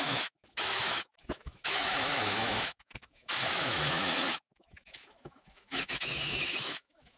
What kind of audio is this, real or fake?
fake